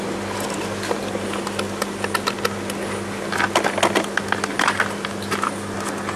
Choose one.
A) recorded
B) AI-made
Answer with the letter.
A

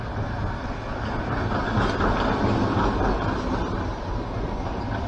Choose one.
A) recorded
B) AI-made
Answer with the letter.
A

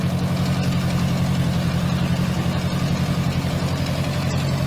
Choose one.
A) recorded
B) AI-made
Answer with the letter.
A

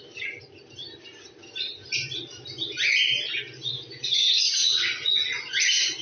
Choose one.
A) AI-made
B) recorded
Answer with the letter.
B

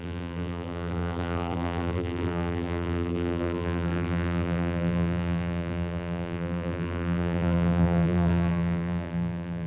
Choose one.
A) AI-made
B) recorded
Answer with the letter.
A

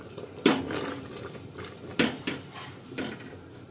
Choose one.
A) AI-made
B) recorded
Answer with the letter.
B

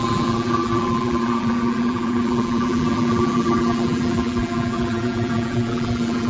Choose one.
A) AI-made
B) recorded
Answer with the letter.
A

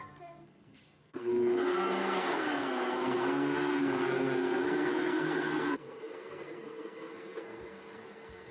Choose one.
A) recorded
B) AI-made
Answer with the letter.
B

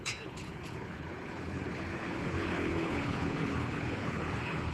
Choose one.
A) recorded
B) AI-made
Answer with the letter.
B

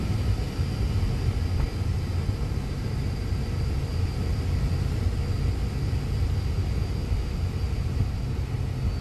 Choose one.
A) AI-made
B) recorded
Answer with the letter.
B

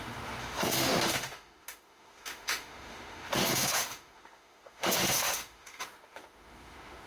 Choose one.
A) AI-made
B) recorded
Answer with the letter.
A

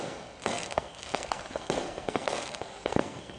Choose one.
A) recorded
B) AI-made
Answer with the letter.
B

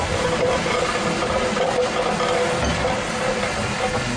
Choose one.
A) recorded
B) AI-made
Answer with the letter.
A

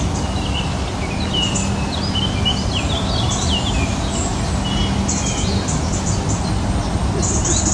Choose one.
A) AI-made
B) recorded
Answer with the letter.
B